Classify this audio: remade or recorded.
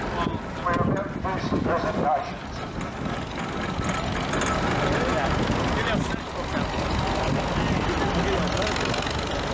recorded